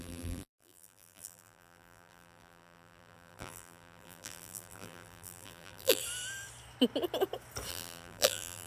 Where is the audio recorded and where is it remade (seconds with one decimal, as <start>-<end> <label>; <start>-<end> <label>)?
0.0-6.0 remade; 6.0-7.7 recorded; 7.7-8.7 remade